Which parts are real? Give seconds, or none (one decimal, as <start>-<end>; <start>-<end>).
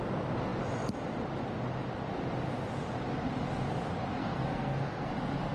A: 0.0-4.2; 5.1-5.5